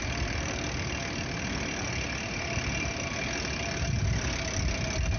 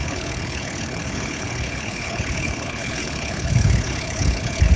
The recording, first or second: first